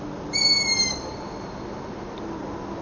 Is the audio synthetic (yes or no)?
yes